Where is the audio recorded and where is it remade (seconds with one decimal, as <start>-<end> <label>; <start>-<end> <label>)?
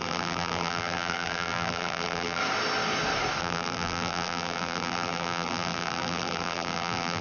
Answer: 0.0-2.4 remade; 2.4-3.4 recorded; 3.4-7.2 remade